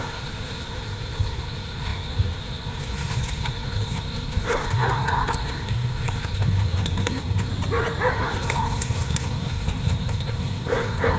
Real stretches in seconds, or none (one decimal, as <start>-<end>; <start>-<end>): 7.5-8.1